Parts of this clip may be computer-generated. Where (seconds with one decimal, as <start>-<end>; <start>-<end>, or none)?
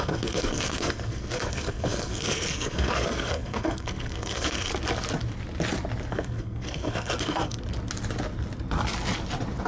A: 0.0-4.7; 6.1-7.6